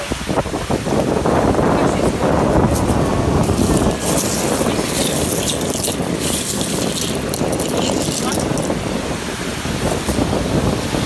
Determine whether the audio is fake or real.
real